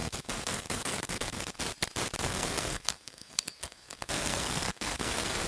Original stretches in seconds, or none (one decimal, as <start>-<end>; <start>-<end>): 1.6-2.2